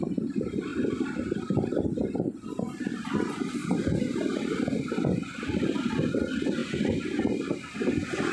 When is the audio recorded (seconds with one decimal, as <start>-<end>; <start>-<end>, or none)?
0.0-0.7; 2.5-3.6; 5.9-8.3